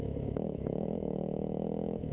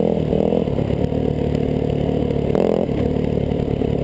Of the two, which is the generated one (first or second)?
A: first